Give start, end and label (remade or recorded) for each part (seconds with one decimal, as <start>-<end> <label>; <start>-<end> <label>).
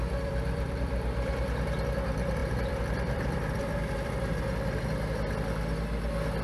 0.0-1.3 remade; 1.3-2.4 recorded; 2.4-4.4 remade; 4.4-6.4 recorded